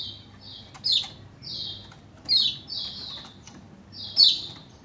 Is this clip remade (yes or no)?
no